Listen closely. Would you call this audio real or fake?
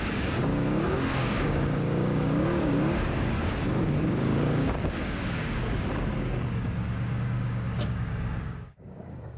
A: fake